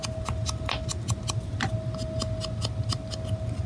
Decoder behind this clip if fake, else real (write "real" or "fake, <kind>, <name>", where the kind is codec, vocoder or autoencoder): real